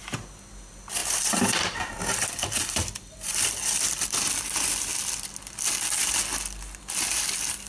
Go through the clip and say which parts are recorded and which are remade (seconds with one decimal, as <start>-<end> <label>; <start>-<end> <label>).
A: 0.0-1.0 recorded; 1.0-4.3 remade; 4.3-7.7 recorded